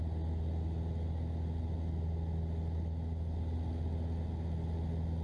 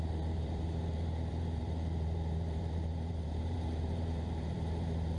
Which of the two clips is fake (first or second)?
second